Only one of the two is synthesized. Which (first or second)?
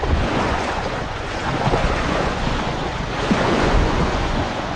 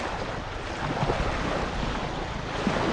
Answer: first